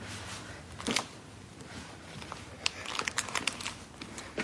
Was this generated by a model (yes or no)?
yes